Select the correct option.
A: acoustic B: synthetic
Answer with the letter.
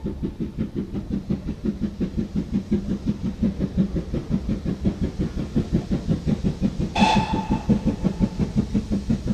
A